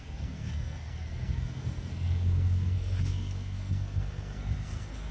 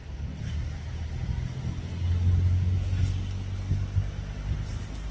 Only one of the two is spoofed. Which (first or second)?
first